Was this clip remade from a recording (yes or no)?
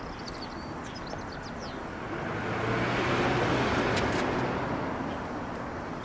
no